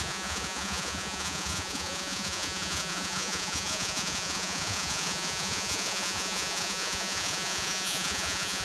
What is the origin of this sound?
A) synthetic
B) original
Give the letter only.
A